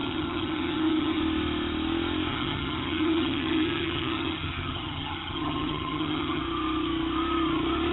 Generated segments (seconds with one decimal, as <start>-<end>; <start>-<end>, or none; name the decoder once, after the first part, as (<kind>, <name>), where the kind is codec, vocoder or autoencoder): 0.0-1.2 (vocoder, HiFi-GAN); 2.3-6.4